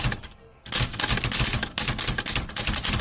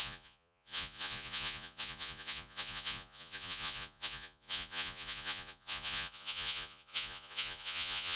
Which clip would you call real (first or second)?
first